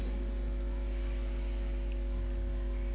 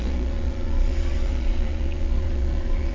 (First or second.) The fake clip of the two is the second